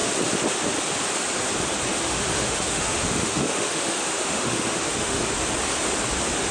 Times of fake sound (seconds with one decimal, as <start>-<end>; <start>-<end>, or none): 2.0-5.2